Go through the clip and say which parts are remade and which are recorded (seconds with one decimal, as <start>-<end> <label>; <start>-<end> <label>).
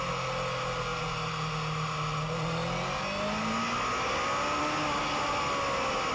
0.0-6.1 recorded